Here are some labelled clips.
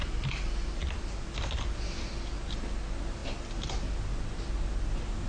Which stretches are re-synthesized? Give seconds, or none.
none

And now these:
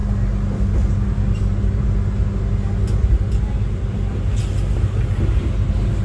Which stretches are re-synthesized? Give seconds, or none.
none